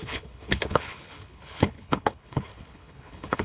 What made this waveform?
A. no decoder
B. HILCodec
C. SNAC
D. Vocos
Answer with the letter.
B